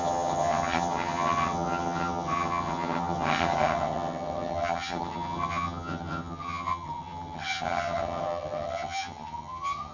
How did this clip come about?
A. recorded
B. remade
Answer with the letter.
B